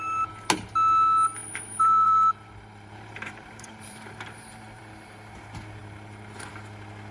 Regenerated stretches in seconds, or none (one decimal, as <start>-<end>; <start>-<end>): 1.4-4.8; 5.8-6.5